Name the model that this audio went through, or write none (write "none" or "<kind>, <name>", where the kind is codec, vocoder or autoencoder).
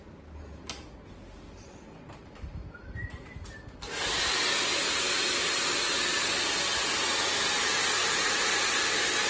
none